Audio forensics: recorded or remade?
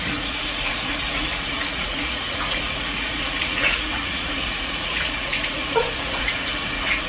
remade